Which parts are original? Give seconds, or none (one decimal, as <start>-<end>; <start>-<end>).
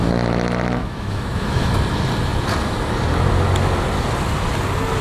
0.0-0.8; 1.7-5.0